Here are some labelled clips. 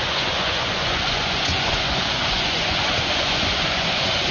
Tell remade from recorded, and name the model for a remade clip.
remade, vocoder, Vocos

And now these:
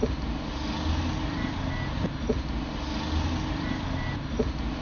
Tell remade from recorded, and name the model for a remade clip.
recorded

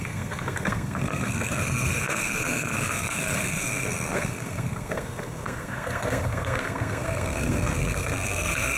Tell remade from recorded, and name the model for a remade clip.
remade, codec, SNAC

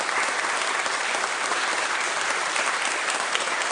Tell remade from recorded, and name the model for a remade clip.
remade, vocoder, BigVGAN v2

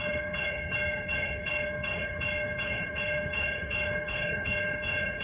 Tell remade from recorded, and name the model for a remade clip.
remade, codec, HILCodec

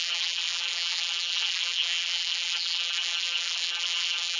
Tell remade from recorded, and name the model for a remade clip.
remade, vocoder, BigVGAN v2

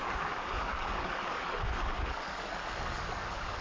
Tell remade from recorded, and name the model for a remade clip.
remade, codec, DAC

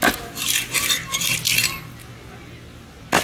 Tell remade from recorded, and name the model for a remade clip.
recorded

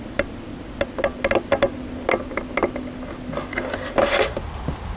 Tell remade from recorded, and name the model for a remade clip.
recorded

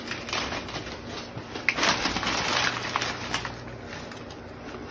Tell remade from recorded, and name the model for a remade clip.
recorded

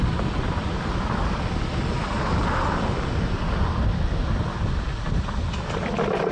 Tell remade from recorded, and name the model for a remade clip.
recorded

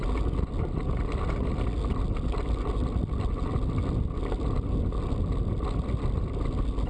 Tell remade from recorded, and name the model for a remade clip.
recorded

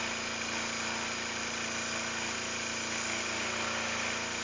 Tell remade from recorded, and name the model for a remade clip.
recorded